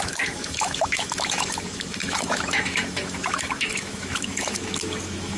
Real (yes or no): no